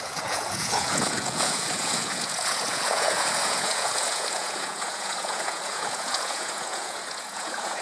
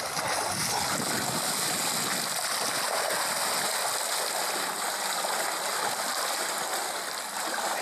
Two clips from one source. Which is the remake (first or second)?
first